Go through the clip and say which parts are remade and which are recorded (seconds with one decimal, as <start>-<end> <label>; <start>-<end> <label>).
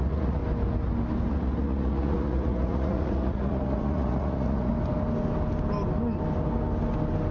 0.0-0.4 remade; 0.4-1.3 recorded; 1.3-4.7 remade; 4.7-7.3 recorded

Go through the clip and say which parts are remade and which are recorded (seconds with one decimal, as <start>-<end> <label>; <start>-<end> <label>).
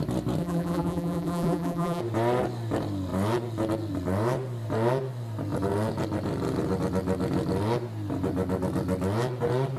0.0-0.4 recorded; 0.4-2.0 remade; 2.0-9.8 recorded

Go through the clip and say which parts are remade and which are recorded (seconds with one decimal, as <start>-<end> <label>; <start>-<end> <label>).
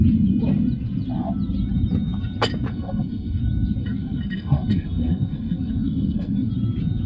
0.0-2.7 recorded; 2.7-3.4 remade; 3.4-3.8 recorded; 3.8-6.5 remade; 6.5-7.1 recorded